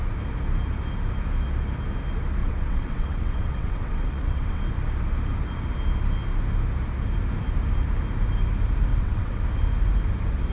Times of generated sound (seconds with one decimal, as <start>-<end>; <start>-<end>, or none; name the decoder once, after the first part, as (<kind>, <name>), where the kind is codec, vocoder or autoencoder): 2.4-4.6 (vocoder, WaveNeXt); 8.9-9.4